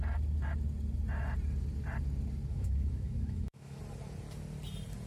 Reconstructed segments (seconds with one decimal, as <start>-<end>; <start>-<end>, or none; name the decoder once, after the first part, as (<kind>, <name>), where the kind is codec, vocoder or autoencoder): 2.5-3.8 (autoencoder, DAC-VAE)